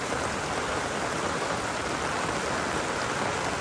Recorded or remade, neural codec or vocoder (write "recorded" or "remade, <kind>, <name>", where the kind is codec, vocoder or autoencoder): remade, vocoder, BigVGAN v2